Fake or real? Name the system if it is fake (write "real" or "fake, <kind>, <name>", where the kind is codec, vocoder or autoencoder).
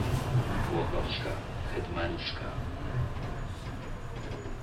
real